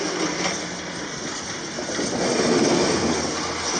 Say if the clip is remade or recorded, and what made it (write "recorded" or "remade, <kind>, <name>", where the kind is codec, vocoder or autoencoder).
recorded